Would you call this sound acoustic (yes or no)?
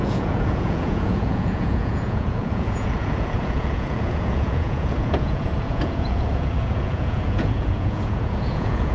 no